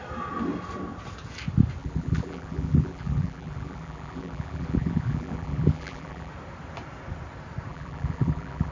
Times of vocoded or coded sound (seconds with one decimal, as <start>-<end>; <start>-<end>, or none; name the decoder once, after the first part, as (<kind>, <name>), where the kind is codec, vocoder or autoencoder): 1.8-6.3 (vocoder, BigVGAN v2); 7.7-8.7